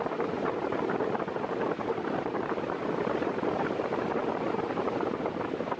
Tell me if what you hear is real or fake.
fake